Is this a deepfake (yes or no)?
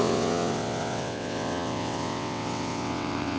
yes